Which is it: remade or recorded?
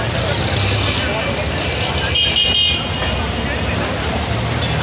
recorded